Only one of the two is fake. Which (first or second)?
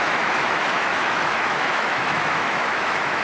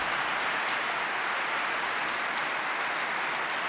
first